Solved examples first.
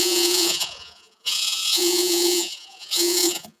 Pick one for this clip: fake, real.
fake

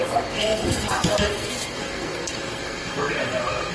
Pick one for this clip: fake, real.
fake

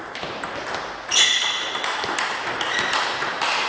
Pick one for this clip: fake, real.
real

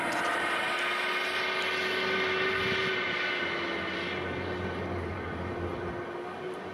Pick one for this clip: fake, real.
real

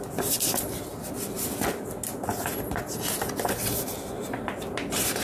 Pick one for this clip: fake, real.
real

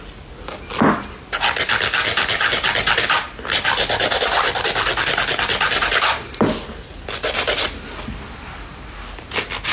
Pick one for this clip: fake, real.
real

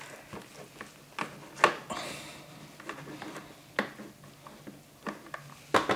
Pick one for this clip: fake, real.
real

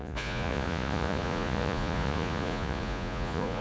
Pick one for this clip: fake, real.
fake